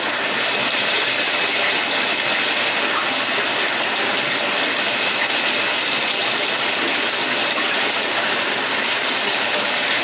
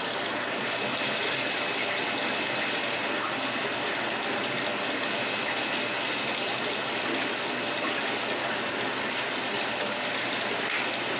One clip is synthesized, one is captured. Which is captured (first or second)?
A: second